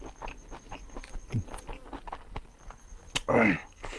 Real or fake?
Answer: real